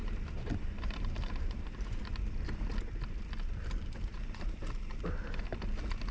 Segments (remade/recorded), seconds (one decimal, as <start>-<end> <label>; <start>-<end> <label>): 0.0-2.0 remade; 2.0-4.1 recorded; 4.1-4.6 remade; 4.6-6.1 recorded